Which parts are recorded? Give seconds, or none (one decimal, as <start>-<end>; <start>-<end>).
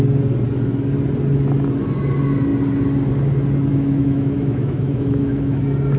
0.0-3.7; 5.6-6.0